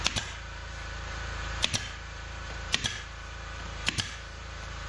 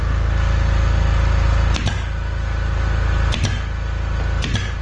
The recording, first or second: second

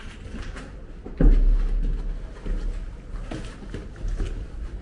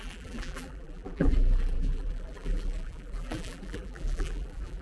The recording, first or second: first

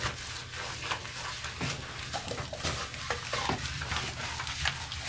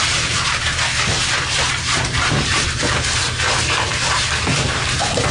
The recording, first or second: first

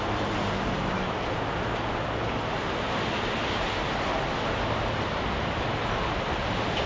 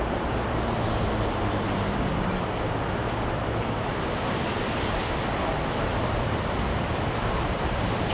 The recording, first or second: first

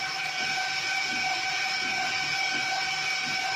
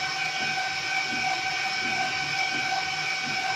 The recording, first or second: second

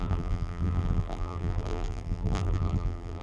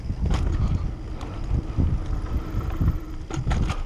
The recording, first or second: second